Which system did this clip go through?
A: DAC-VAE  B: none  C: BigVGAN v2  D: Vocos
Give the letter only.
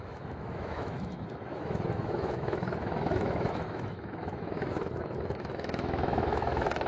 A